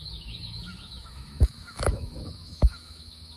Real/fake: fake